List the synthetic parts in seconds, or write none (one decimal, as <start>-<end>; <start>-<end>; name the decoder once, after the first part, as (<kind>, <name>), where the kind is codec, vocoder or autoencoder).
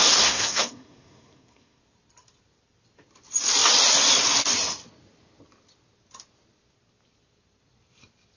0.0-1.8 (codec, SNAC)